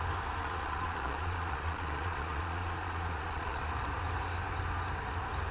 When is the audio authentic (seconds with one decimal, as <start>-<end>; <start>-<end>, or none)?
0.0-0.4; 3.7-5.5